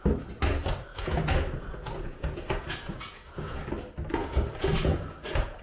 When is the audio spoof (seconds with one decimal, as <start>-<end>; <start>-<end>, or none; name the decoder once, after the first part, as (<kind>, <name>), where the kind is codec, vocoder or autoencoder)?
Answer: 0.9-3.7 (vocoder, Vocos); 4.2-5.6